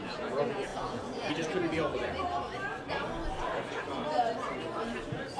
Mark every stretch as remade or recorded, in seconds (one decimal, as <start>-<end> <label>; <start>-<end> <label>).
0.0-1.9 remade; 1.9-5.4 recorded

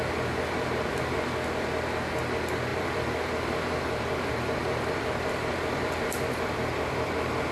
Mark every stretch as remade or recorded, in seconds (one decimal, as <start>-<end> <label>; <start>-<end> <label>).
0.0-2.7 recorded; 2.7-7.5 remade

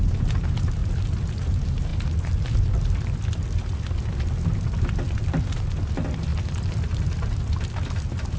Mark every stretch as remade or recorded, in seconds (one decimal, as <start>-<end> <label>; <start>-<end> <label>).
0.0-0.8 recorded; 0.8-1.4 remade; 1.4-6.3 recorded; 6.3-6.9 remade; 6.9-8.4 recorded

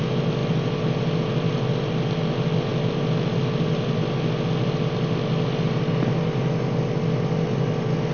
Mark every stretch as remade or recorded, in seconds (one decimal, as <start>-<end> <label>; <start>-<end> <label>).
0.0-8.1 recorded

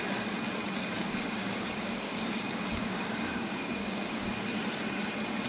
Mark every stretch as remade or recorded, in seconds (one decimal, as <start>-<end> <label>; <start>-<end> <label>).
0.0-1.0 recorded; 1.0-4.3 remade; 4.3-5.5 recorded